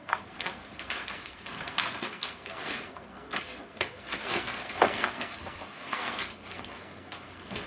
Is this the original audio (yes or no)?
no